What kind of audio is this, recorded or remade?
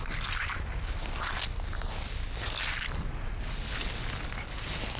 recorded